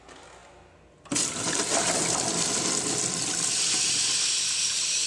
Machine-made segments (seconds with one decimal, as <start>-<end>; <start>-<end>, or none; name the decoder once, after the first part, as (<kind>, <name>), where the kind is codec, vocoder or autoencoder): none